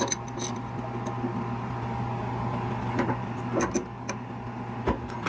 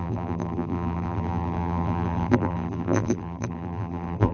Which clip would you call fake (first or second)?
second